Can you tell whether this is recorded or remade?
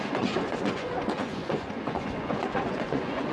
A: remade